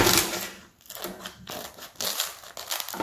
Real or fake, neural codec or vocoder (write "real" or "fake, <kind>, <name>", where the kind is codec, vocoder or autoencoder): real